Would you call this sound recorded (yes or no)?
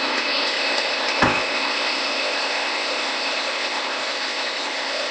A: no